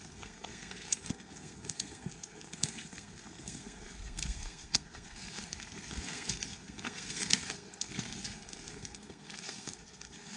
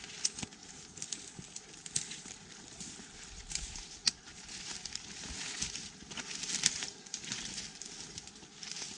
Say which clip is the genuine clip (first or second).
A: second